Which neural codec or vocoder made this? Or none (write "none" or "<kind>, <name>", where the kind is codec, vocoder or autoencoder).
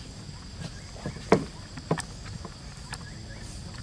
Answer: none